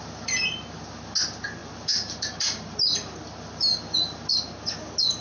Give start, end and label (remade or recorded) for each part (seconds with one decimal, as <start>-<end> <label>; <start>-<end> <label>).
0.0-5.2 recorded